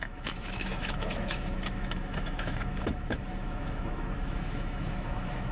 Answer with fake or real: fake